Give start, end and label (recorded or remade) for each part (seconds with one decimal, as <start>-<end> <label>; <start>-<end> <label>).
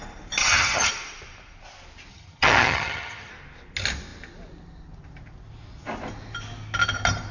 0.0-0.4 recorded; 0.4-0.9 remade; 0.9-2.1 recorded; 2.1-3.3 remade; 3.3-7.3 recorded